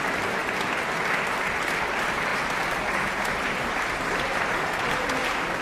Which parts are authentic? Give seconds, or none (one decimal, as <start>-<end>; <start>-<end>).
0.0-2.3; 4.9-5.6